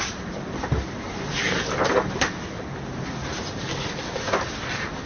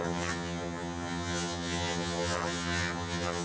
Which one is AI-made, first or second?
second